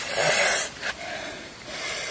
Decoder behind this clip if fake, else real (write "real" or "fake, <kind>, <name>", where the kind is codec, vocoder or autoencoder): real